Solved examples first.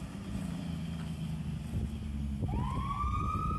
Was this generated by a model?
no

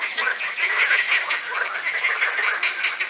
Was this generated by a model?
no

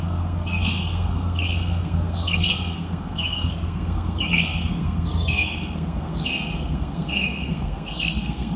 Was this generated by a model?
yes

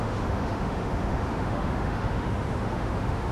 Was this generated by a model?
yes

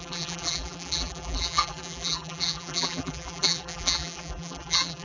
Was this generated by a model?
yes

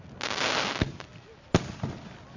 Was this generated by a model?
no